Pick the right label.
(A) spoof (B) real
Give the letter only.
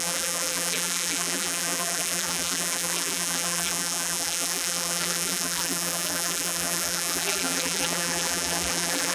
A